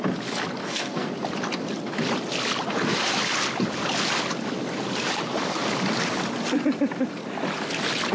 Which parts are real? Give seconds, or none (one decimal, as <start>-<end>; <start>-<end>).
0.0-0.6; 1.1-8.1